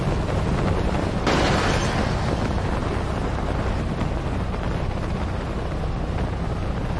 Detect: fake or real real